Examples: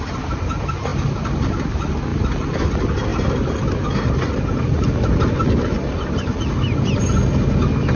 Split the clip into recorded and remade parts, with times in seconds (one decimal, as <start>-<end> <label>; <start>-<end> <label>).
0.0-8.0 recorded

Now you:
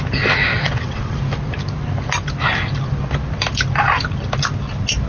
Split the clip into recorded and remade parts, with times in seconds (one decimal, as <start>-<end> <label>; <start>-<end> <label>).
0.0-0.5 recorded; 0.5-1.2 remade; 1.2-5.1 recorded

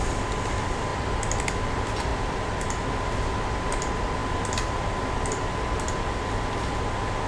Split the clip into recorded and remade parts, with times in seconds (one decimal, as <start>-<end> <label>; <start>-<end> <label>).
0.0-7.3 recorded

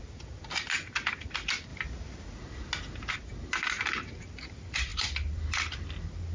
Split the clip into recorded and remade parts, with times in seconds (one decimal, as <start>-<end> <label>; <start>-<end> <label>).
0.0-4.9 recorded; 4.9-6.3 remade

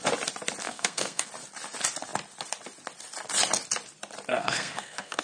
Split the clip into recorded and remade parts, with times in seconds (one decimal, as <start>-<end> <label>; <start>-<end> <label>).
0.0-0.6 recorded; 0.6-1.3 remade; 1.3-4.3 recorded; 4.3-5.2 remade

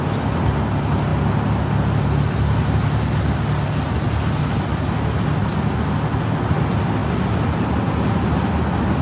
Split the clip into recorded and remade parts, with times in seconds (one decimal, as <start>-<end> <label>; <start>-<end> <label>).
0.0-9.0 recorded

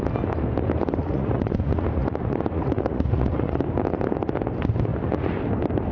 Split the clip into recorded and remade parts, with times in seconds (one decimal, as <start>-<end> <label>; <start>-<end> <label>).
0.0-1.0 recorded; 1.0-3.6 remade; 3.6-5.9 recorded